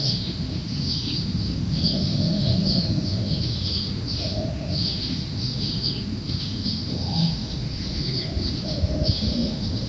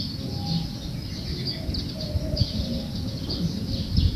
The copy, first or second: first